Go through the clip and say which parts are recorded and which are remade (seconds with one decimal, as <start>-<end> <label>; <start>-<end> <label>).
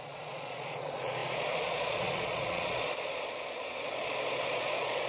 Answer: 0.0-5.1 remade